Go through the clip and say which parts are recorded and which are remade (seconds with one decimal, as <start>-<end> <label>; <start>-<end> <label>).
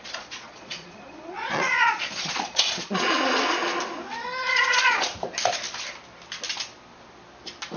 0.0-3.8 remade; 3.8-4.5 recorded; 4.5-5.1 remade; 5.1-7.8 recorded